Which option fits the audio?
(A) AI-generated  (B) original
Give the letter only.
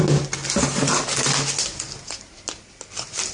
B